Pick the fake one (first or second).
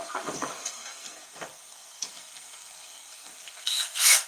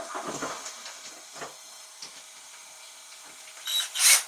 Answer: first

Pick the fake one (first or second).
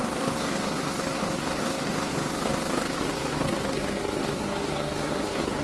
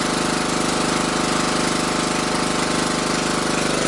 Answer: first